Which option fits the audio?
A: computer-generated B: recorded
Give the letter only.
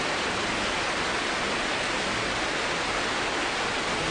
B